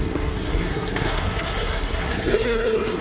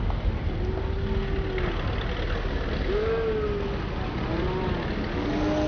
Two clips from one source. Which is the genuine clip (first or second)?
second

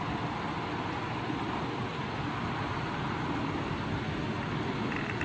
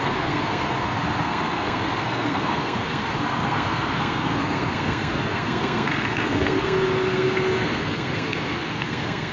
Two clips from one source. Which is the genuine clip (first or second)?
first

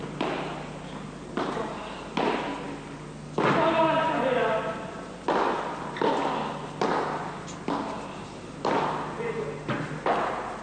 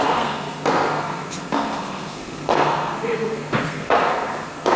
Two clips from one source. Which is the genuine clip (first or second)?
first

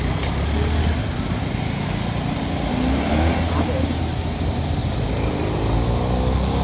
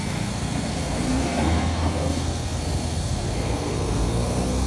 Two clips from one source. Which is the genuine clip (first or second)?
first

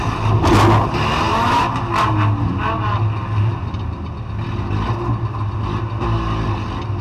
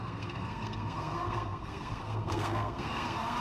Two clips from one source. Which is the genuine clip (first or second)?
first